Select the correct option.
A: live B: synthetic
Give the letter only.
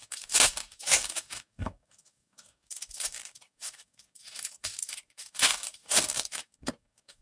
B